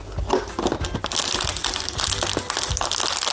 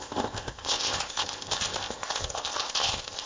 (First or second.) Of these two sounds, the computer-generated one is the second